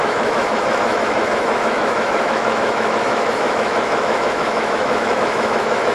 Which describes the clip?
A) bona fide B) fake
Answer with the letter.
B